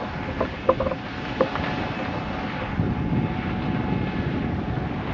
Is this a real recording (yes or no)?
yes